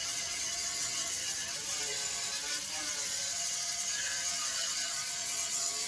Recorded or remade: remade